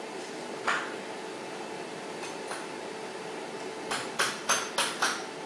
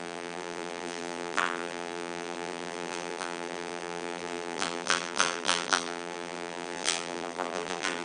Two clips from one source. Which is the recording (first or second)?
first